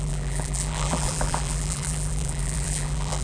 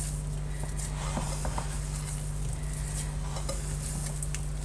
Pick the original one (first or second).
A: second